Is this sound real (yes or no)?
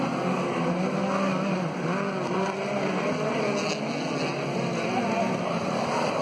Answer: yes